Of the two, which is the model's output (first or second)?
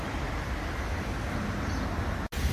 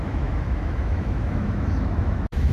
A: second